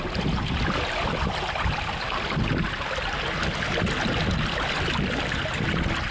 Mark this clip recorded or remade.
recorded